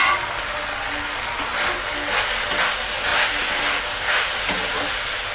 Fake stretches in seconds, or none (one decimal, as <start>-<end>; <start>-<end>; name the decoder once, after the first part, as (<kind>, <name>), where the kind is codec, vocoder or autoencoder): none